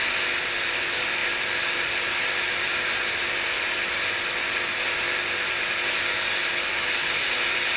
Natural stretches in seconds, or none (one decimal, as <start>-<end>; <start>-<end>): 0.0-7.8